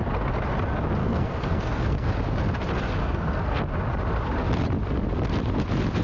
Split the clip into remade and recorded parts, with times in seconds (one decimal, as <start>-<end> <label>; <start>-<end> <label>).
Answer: 0.0-1.0 recorded; 1.0-2.1 remade; 2.1-3.0 recorded; 3.0-3.6 remade; 3.6-6.0 recorded